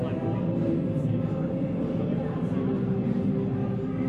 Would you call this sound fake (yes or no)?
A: no